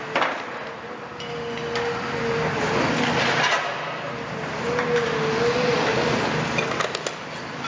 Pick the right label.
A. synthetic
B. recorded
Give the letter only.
B